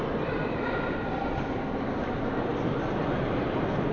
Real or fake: real